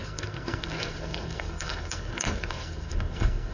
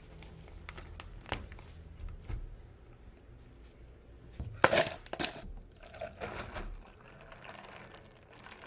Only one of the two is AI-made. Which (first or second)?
first